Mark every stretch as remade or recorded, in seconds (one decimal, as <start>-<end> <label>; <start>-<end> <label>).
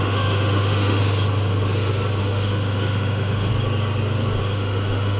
0.0-1.0 remade; 1.0-2.2 recorded; 2.2-3.5 remade; 3.5-4.4 recorded; 4.4-5.2 remade